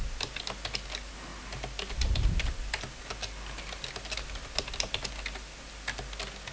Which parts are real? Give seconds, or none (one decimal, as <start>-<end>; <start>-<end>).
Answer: 0.0-6.5